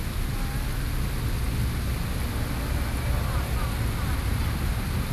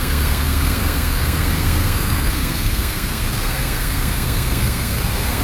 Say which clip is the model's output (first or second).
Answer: second